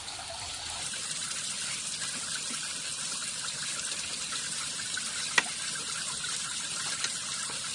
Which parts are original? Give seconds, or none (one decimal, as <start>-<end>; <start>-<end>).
0.0-7.7